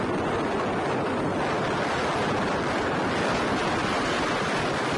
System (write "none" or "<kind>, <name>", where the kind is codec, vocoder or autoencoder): none